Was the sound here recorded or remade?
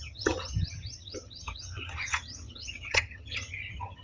remade